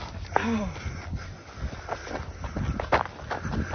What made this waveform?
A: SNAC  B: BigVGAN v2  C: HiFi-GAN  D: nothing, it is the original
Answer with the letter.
D